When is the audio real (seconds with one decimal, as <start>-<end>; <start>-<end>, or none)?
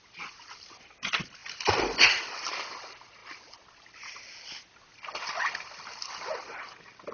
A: 0.0-7.1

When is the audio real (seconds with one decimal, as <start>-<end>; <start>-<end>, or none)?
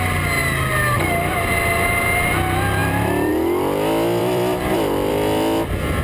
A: 0.0-2.8; 3.3-4.2; 5.1-6.0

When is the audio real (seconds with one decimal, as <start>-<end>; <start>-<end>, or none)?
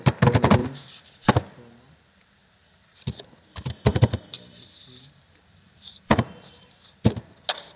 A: 0.0-0.6; 1.3-3.9; 6.7-7.8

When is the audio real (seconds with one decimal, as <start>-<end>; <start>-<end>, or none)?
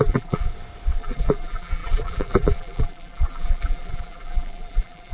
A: 0.5-1.0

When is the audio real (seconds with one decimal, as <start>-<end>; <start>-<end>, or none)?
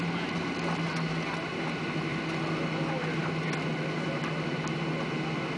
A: 0.0-5.6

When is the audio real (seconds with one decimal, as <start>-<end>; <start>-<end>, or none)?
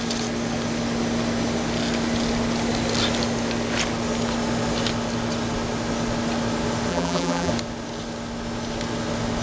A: 0.0-6.9; 7.5-9.4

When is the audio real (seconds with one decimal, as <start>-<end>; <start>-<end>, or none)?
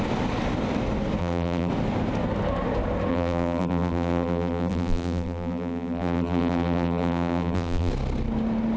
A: 0.0-1.2; 1.7-3.1; 7.9-8.8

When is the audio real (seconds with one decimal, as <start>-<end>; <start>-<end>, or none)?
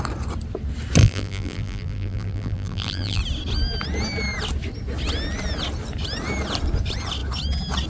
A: 0.0-1.0; 3.2-7.9